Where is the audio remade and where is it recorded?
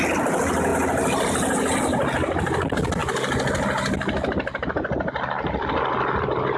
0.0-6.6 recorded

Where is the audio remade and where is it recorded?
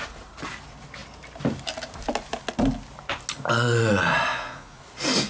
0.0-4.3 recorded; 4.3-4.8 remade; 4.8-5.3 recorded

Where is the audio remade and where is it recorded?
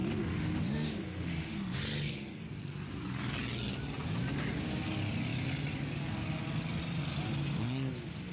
0.0-1.8 remade; 1.8-8.3 recorded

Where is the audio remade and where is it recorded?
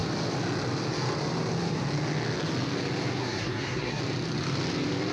0.0-3.2 recorded; 3.2-4.0 remade; 4.0-5.1 recorded